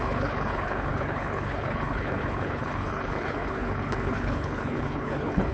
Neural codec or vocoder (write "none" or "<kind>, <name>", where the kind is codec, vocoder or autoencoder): codec, HILCodec